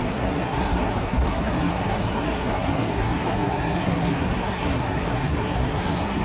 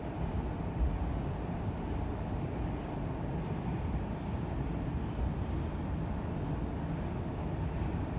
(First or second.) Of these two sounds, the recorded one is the second